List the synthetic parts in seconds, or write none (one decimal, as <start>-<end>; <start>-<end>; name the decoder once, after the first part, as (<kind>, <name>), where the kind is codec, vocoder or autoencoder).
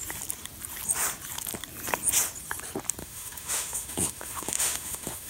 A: 3.0-5.3 (autoencoder, DAC-VAE)